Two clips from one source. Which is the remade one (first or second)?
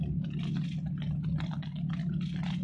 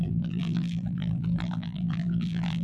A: second